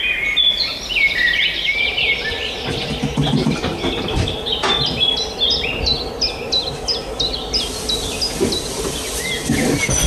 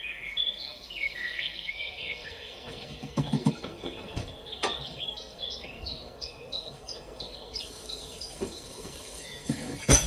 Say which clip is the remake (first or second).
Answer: second